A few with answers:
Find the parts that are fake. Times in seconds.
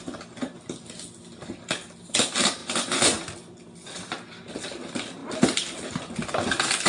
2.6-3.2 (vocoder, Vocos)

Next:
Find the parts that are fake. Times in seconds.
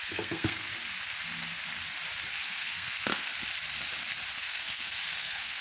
0.0-0.7 (codec, SNAC); 2.3-3.3; 4.4-5.6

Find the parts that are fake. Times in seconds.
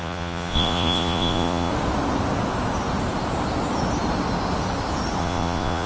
0.0-1.7 (vocoder, Vocos); 5.2-5.9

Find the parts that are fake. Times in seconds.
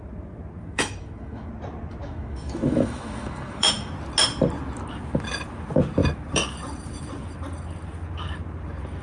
0.6-1.5 (autoencoder, DAC-VAE); 2.0-3.9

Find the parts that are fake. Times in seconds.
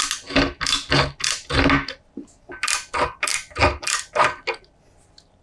none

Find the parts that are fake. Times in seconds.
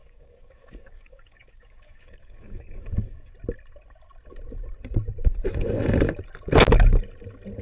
0.0-3.3 (codec, DAC)